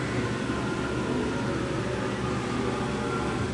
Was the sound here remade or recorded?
recorded